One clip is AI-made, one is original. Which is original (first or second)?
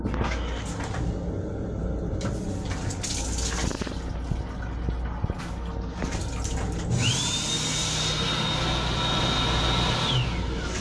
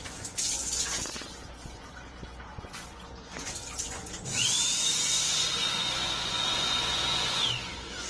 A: first